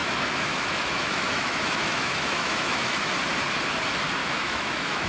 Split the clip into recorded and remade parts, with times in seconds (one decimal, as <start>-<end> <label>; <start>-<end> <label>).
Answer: 0.0-3.1 remade; 3.1-4.2 recorded; 4.2-5.1 remade